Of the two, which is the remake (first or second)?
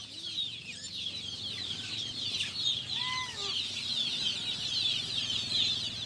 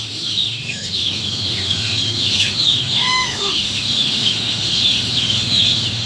second